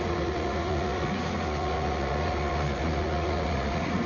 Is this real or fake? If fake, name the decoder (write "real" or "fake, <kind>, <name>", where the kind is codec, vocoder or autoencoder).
fake, vocoder, Vocos